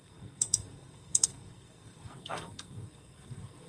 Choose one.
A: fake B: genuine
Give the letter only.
A